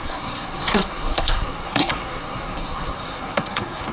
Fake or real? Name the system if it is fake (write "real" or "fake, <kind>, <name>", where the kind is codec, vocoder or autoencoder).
fake, codec, SNAC